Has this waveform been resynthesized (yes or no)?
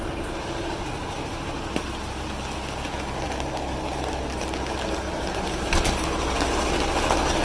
no